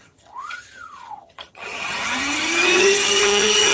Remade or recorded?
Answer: remade